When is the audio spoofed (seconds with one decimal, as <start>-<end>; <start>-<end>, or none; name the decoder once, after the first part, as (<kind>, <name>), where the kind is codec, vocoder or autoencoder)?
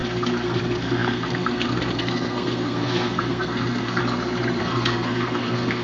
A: 0.0-4.0 (codec, SNAC); 4.6-5.8